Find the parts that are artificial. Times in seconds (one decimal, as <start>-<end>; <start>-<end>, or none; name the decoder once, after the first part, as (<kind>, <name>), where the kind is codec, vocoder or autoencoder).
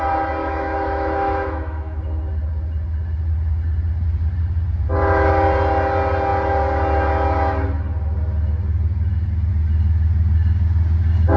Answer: 0.4-2.0 (autoencoder, DAC-VAE)